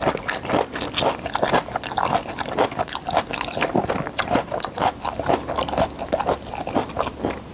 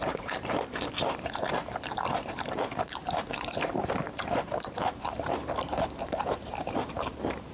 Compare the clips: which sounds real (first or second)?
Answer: first